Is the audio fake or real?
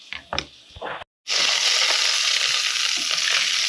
real